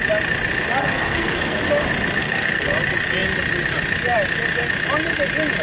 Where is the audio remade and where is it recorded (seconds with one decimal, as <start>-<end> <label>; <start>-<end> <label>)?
0.0-0.8 recorded; 0.8-1.6 remade; 1.6-2.2 recorded; 2.2-2.7 remade; 2.7-5.6 recorded